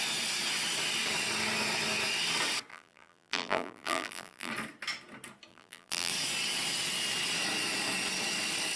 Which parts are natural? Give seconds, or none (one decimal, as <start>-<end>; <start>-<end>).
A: 0.0-2.7; 4.5-5.5; 6.1-8.8